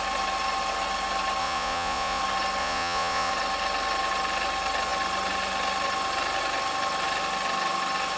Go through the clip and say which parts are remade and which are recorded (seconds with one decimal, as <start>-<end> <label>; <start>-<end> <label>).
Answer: 0.0-1.4 recorded; 1.4-2.2 remade; 2.2-2.6 recorded; 2.6-3.3 remade; 3.3-8.2 recorded